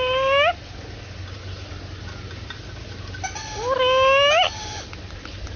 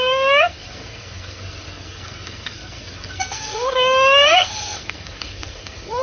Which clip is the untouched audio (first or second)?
first